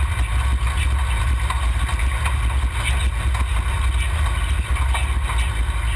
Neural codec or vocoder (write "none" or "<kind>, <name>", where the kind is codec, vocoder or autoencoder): none